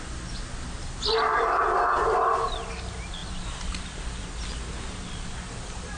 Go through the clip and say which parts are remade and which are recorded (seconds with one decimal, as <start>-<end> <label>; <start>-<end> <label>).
0.0-6.0 recorded